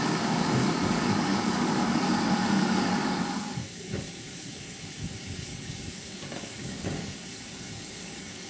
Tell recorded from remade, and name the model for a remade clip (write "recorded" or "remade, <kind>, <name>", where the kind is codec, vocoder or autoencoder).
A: remade, codec, DAC